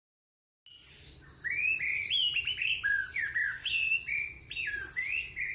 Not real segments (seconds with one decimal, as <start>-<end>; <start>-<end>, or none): none

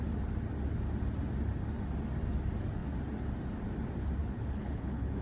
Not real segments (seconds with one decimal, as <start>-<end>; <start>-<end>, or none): 4.2-5.2

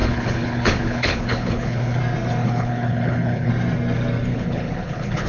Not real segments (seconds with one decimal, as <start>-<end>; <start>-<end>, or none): 0.0-2.0; 2.4-3.5; 4.3-5.3

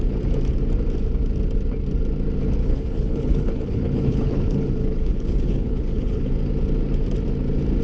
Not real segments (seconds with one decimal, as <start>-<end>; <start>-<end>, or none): 2.6-6.3

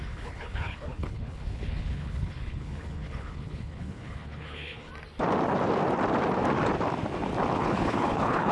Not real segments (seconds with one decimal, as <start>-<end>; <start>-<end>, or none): 0.0-4.9; 7.6-8.5